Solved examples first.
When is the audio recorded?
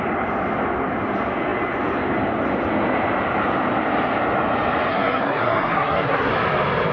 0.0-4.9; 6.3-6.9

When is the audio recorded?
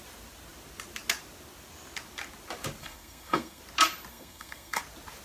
0.0-2.8; 3.6-4.1; 4.8-5.2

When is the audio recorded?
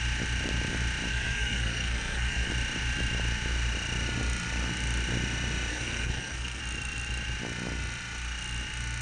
0.0-1.1; 2.5-5.7; 6.6-9.0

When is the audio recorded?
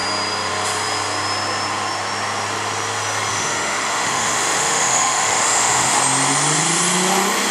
0.0-3.3; 6.0-7.5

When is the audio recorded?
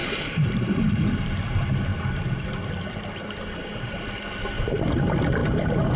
1.1-6.0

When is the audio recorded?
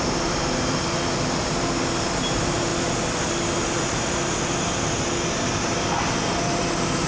2.7-3.5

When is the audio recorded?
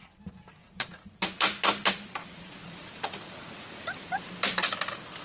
0.0-0.6; 1.3-2.2; 4.1-5.2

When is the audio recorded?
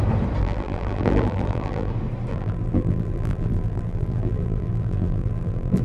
0.0-0.4; 1.9-2.3